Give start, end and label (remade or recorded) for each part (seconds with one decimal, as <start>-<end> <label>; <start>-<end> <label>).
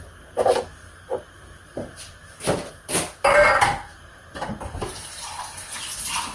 0.0-0.8 recorded; 0.8-1.9 remade; 1.9-3.9 recorded; 3.9-5.4 remade; 5.4-6.3 recorded